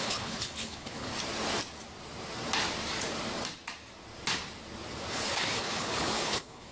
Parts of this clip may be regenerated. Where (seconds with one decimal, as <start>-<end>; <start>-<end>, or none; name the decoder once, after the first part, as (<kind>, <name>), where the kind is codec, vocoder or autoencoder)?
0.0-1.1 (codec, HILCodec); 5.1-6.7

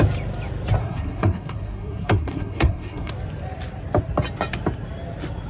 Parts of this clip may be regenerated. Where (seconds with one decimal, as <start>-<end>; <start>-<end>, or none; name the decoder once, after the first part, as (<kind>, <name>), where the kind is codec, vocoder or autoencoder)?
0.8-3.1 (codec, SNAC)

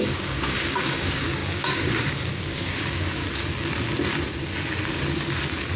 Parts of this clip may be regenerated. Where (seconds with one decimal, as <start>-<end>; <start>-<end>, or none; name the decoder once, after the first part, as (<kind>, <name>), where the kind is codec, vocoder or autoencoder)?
0.0-3.2 (codec, DAC)

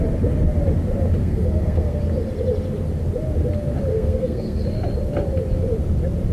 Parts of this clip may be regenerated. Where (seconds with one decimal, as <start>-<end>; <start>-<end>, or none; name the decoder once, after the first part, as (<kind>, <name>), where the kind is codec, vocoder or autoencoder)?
1.2-2.0 (codec, SNAC); 3.9-4.6